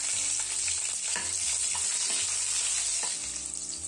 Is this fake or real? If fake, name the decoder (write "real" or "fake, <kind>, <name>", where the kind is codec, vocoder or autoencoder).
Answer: real